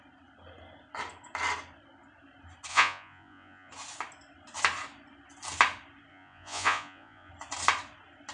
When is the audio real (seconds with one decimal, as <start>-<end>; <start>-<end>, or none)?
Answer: 0.0-2.7; 3.7-6.1; 7.3-8.3